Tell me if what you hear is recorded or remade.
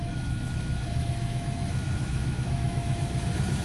remade